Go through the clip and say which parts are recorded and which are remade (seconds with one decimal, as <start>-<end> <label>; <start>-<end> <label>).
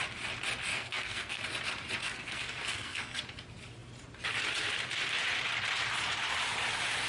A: 0.0-0.7 recorded; 0.7-1.4 remade; 1.4-2.0 recorded; 2.0-3.2 remade; 3.2-7.1 recorded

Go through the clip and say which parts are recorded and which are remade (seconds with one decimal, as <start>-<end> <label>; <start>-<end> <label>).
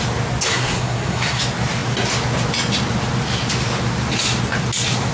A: 0.0-0.5 recorded; 0.5-1.4 remade; 1.4-5.1 recorded